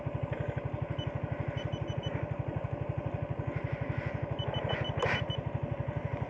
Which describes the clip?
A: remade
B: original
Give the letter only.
B